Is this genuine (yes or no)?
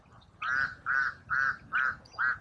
yes